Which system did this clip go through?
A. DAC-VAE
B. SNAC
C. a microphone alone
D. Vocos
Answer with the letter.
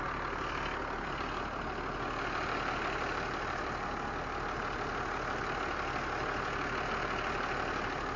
C